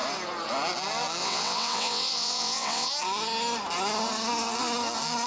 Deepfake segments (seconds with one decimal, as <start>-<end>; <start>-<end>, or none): 1.2-2.9